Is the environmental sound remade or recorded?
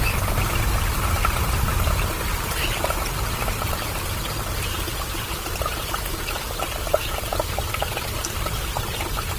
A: recorded